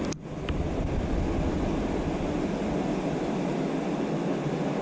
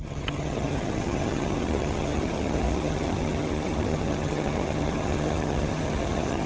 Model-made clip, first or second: second